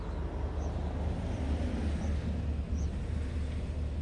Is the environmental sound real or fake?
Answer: real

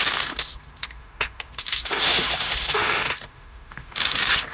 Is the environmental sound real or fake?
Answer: fake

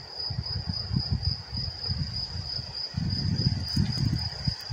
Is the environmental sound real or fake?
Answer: real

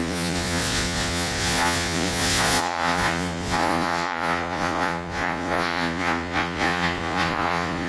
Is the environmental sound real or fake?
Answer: fake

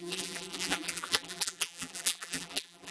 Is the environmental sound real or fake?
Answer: fake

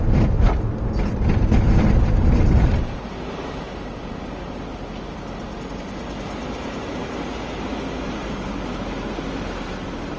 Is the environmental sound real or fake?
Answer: real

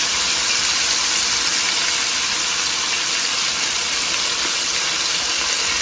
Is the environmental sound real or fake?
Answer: real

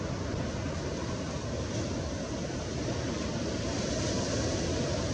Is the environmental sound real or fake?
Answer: real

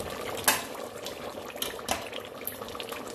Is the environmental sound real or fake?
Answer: real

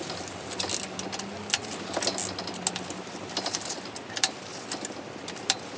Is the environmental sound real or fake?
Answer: real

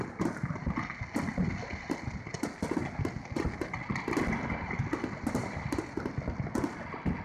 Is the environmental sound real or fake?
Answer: real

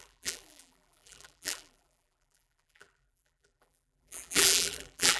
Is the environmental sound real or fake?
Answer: fake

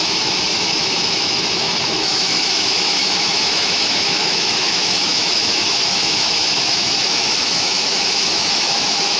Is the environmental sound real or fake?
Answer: fake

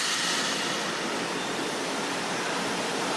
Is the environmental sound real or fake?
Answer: real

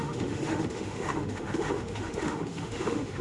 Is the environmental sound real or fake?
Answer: fake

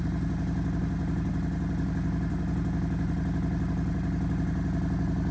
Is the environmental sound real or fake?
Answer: real